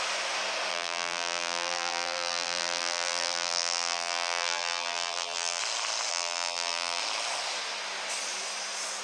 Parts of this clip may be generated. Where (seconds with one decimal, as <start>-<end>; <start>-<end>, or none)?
0.7-5.6; 6.1-7.0